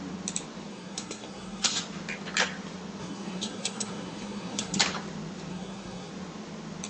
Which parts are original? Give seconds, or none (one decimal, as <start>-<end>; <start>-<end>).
0.0-0.7; 1.8-3.0; 4.8-5.5; 6.1-6.9